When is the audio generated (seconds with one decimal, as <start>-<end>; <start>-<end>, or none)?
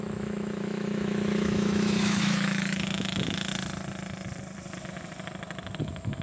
0.0-3.5; 5.8-6.2